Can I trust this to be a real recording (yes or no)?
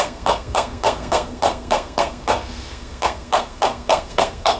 no